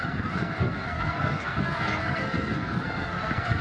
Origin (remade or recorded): remade